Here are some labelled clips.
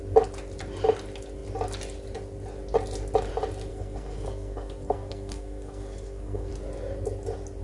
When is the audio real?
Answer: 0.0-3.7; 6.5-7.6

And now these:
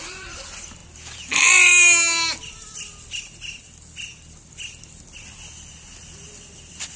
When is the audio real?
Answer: 0.0-7.0

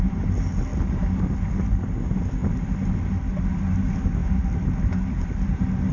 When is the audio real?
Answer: 0.0-5.9

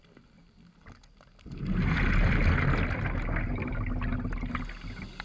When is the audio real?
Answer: 0.0-5.2

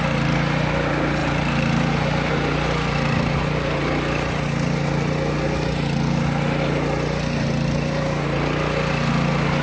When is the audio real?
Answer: 0.0-1.2; 2.3-9.6